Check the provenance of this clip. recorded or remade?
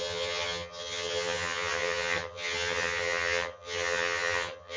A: remade